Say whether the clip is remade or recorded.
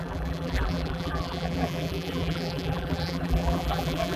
remade